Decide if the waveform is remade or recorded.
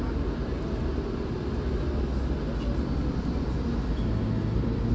recorded